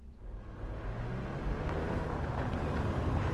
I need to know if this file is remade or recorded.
recorded